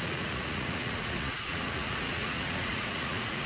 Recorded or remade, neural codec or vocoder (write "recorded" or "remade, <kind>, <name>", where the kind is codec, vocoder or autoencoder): remade, vocoder, Vocos